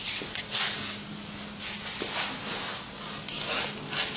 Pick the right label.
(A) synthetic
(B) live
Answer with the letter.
B